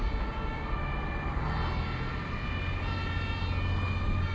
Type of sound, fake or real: real